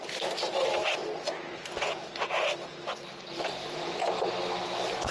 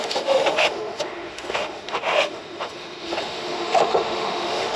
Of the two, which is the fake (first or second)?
second